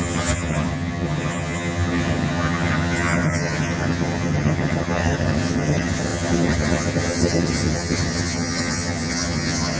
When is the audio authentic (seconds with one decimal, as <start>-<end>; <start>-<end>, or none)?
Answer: none